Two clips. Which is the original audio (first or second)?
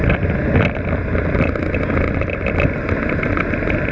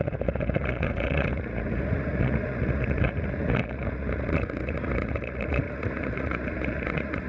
first